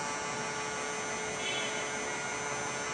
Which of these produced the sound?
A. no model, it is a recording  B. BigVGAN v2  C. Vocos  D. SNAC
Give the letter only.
A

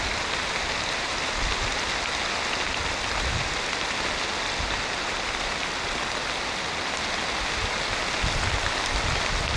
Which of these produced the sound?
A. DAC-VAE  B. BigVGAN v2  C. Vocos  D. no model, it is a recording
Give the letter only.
D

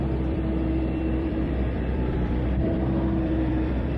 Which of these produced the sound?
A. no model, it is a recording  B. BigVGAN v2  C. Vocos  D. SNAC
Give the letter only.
B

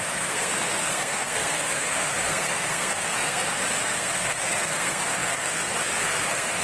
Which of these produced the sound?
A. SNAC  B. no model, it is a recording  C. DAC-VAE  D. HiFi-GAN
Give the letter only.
A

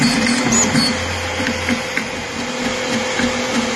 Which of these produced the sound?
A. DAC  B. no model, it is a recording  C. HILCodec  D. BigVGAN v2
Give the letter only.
B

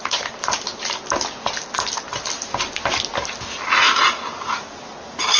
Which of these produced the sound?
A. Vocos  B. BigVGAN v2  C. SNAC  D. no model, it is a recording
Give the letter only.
D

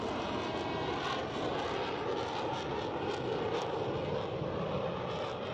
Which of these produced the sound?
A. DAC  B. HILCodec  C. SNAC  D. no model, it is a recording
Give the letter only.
D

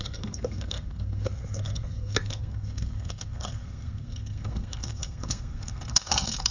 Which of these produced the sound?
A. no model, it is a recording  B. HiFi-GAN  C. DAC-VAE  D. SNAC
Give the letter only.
D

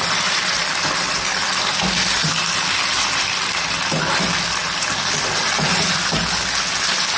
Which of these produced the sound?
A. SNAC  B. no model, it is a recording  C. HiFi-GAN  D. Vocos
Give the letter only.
B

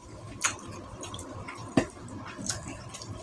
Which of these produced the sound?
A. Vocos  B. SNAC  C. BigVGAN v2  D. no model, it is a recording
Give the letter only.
C